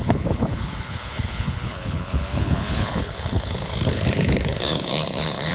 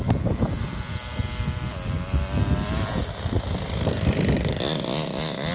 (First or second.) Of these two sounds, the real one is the second